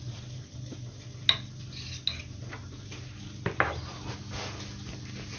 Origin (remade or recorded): recorded